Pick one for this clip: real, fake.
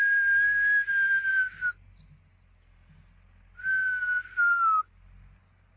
real